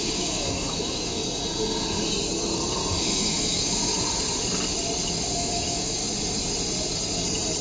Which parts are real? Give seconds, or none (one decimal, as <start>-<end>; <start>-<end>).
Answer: 1.2-3.0; 3.9-5.3; 6.0-7.6